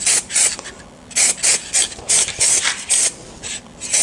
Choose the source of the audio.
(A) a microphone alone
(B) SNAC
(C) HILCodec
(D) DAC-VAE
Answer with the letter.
A